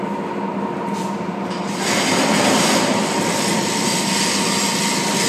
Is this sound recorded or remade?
recorded